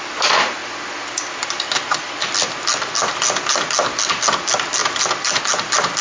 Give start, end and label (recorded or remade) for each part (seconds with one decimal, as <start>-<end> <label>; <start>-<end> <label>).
0.0-6.0 recorded